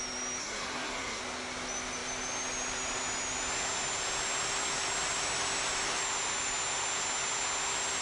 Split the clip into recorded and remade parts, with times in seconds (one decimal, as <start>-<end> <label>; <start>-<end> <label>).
0.0-0.4 recorded; 0.4-1.2 remade; 1.2-8.0 recorded